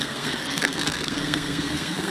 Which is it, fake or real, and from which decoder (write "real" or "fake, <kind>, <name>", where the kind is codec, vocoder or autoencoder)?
fake, codec, SNAC